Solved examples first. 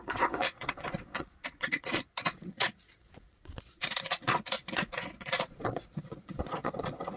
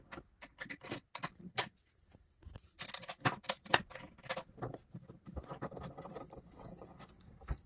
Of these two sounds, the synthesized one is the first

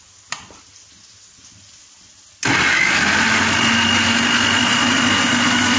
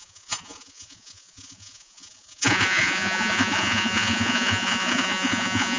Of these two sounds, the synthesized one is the second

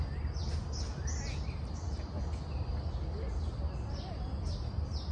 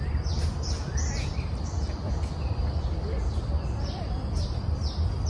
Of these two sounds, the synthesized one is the second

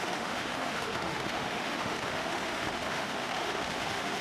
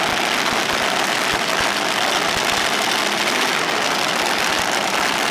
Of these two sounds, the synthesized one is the first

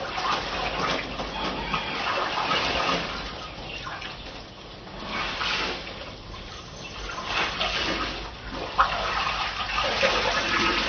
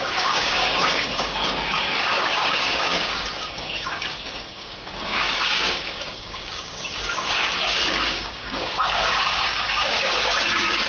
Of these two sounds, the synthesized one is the second